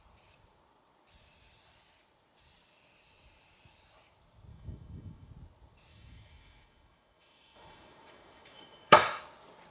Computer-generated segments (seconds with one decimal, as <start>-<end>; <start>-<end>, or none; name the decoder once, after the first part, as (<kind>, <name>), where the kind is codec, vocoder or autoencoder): 4.5-5.3 (autoencoder, DAC-VAE); 5.9-9.2